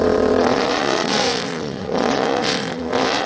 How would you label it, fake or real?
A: fake